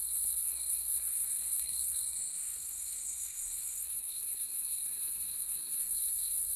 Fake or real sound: fake